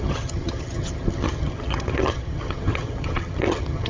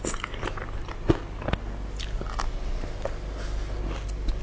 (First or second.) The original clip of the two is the second